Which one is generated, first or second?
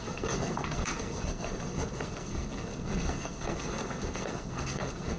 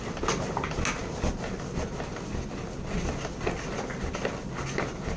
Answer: first